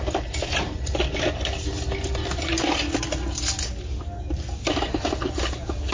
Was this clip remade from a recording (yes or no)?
no